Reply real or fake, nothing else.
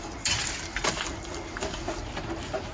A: real